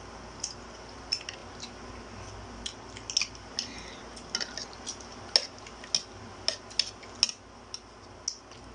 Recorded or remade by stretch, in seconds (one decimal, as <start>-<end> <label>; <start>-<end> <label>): 0.0-8.7 recorded

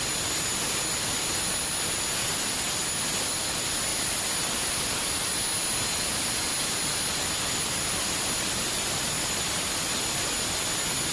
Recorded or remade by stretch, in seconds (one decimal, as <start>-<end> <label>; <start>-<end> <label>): 0.0-11.1 recorded

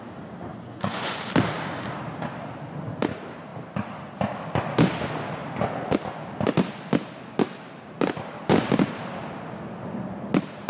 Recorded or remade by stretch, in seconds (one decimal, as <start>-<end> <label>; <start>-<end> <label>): 0.0-0.5 recorded; 0.5-1.3 remade; 1.3-10.7 recorded

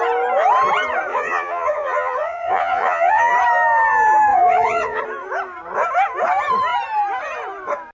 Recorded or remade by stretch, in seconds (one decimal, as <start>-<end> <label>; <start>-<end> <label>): 0.0-1.1 recorded; 1.1-3.3 remade; 3.3-4.3 recorded; 4.3-5.0 remade; 5.0-7.9 recorded

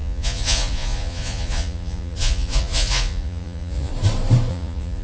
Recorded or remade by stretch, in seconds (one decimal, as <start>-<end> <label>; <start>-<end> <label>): 0.0-3.9 remade; 3.9-4.5 recorded; 4.5-5.0 remade